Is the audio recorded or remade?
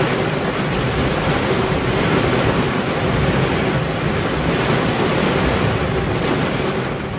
recorded